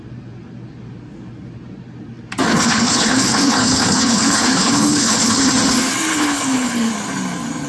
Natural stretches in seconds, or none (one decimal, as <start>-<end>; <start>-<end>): 0.0-2.5; 5.5-6.1; 6.9-7.7